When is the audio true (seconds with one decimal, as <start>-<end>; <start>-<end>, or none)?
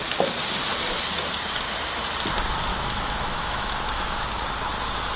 0.0-2.7; 4.4-5.2